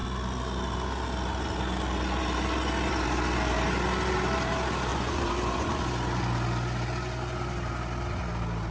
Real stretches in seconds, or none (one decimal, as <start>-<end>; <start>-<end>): 0.0-4.9; 5.8-8.7